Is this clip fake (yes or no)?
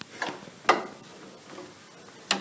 no